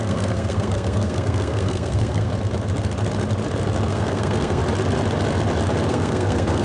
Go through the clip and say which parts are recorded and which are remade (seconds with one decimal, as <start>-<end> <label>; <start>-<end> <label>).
0.0-2.3 remade; 2.3-3.9 recorded; 3.9-4.6 remade; 4.6-5.9 recorded; 5.9-6.6 remade

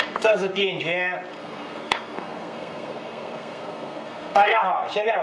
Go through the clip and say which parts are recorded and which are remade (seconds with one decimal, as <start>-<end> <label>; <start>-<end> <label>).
0.0-0.6 remade; 0.6-1.3 recorded; 1.3-5.2 remade

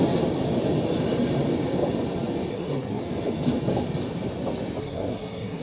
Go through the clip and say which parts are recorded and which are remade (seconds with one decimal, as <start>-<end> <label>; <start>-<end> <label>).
0.0-2.5 recorded; 2.5-3.0 remade; 3.0-4.8 recorded; 4.8-5.6 remade